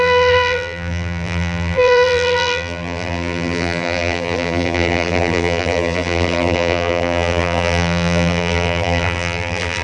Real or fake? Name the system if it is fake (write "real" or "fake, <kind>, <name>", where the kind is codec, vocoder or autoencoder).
fake, vocoder, BigVGAN v2